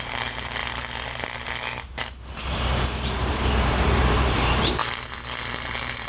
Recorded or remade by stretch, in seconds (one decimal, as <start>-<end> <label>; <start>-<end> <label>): 0.0-0.6 remade; 0.6-2.5 recorded; 2.5-4.8 remade; 4.8-5.5 recorded; 5.5-6.1 remade